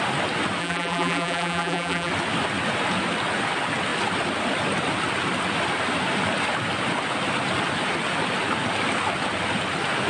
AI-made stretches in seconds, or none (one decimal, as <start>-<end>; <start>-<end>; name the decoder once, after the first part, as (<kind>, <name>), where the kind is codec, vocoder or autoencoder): 0.6-2.1 (vocoder, BigVGAN v2)